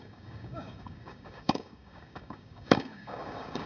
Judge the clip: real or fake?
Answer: fake